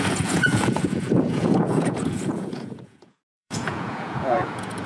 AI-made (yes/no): yes